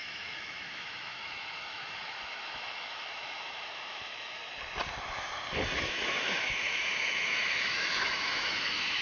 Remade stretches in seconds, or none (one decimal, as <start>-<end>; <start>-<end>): 0.0-4.4; 5.8-9.0